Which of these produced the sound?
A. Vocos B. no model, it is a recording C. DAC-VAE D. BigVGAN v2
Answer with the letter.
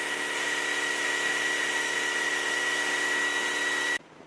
B